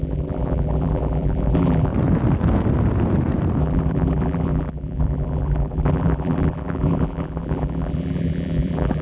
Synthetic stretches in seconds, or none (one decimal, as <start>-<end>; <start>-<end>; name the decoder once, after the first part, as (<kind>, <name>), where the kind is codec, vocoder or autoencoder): 0.0-1.9 (vocoder, BigVGAN v2); 3.6-9.0